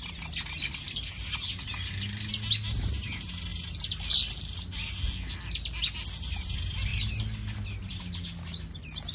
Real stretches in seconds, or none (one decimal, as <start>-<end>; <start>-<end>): 0.0-9.1

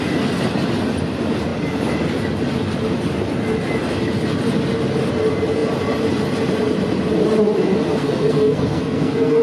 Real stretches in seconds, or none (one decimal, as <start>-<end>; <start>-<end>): 0.0-7.9

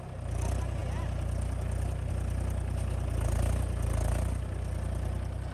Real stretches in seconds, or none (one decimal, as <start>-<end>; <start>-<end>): 0.0-5.5

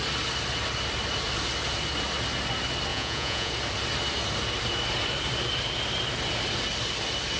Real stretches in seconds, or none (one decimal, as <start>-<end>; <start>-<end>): 0.0-2.9; 3.5-7.4

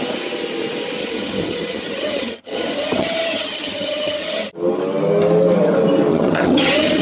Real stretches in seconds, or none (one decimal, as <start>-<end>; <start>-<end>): 0.0-1.0; 4.5-6.1

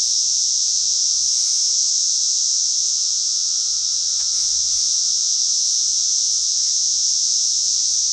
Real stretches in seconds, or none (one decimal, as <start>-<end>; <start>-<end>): none

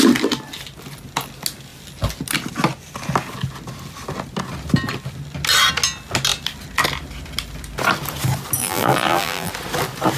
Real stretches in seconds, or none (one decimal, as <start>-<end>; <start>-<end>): 0.0-8.6; 9.5-10.2